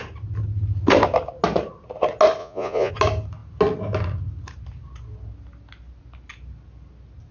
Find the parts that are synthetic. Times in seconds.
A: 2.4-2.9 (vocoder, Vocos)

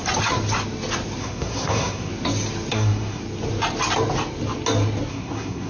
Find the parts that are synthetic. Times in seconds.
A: 1.2-2.1 (codec, SNAC); 2.7-3.2; 5.1-5.7

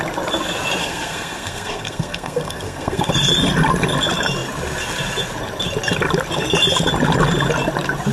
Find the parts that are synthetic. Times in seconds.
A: 0.8-3.1 (codec, SNAC)

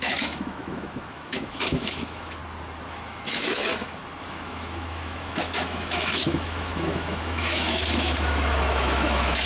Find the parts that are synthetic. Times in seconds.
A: 0.0-2.4 (autoencoder, DAC-VAE); 2.9-3.7; 4.2-9.5

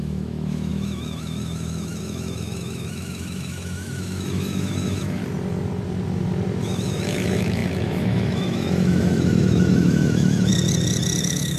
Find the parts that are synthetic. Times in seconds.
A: 0.0-5.2 (autoencoder, DAC-VAE); 6.6-10.5; 11.2-11.6